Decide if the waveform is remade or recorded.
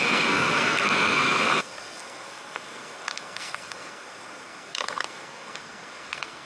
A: remade